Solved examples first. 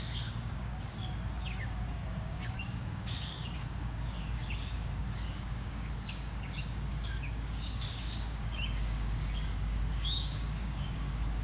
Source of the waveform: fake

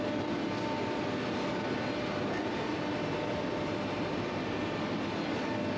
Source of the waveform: real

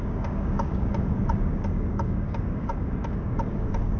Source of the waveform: fake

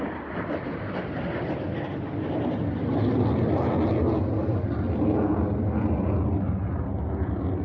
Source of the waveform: real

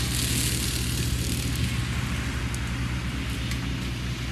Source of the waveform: real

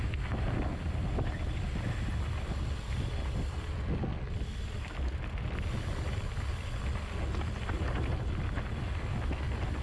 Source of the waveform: real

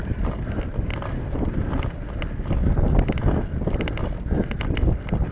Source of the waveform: real